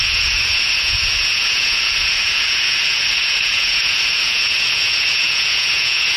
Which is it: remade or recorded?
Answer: remade